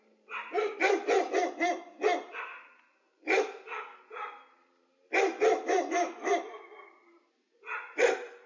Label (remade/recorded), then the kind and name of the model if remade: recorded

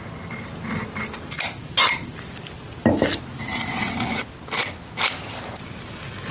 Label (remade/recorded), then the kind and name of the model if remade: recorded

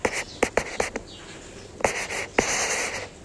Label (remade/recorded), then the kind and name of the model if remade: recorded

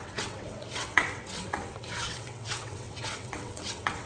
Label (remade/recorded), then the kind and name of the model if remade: remade, vocoder, WaveNeXt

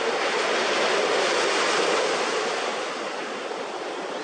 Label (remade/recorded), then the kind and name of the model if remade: recorded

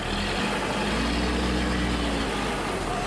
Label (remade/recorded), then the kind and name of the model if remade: recorded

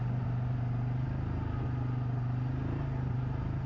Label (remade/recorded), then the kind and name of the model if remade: recorded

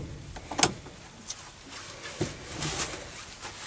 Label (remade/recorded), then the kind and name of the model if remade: recorded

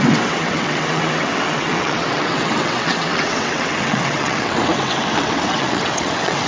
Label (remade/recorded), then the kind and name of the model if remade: remade, vocoder, WaveNeXt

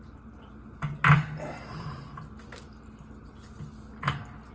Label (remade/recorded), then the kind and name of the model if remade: recorded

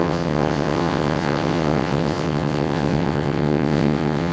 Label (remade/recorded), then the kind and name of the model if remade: remade, vocoder, WaveNeXt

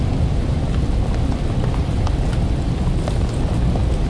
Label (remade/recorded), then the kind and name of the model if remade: recorded